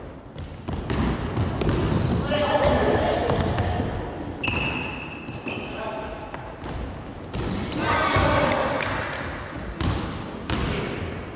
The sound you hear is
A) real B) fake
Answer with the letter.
A